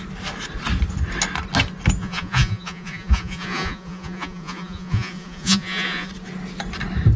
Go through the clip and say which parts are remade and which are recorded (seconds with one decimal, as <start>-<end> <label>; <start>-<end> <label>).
0.0-2.0 recorded; 2.0-6.1 remade; 6.1-7.2 recorded